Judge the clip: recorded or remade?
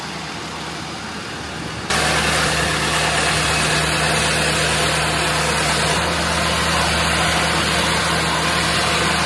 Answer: recorded